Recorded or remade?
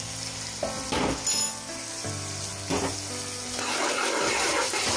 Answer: recorded